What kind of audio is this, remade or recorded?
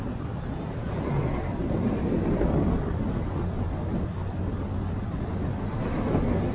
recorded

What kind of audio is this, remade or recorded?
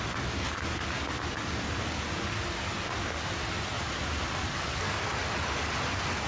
recorded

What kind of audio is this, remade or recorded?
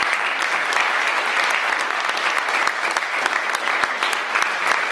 recorded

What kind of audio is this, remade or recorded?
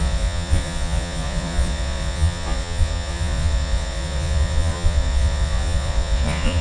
remade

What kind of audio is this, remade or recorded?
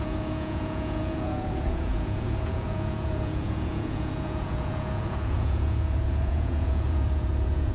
remade